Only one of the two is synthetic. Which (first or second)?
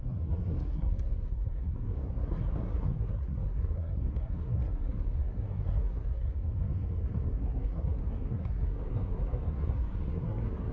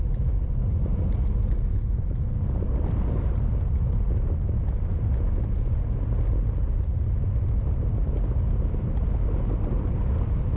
first